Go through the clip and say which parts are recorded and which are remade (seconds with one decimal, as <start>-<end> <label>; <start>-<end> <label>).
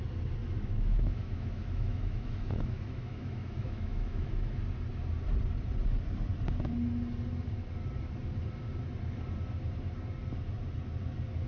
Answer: 0.0-0.4 recorded; 0.4-4.6 remade; 4.6-11.5 recorded